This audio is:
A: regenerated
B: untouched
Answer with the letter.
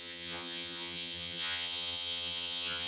A